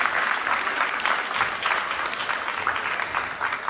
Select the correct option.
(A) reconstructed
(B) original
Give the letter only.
B